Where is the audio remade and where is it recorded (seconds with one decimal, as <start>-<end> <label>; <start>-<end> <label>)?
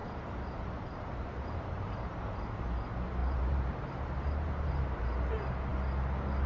0.0-2.7 remade; 2.7-3.2 recorded; 3.2-5.3 remade; 5.3-6.5 recorded